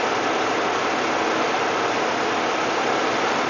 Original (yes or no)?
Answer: yes